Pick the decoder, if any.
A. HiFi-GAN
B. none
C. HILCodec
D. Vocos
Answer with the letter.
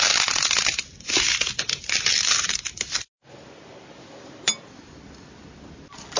B